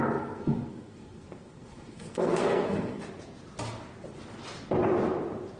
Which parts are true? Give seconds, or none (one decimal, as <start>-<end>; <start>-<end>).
3.0-5.6